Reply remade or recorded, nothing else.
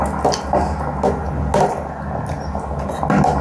recorded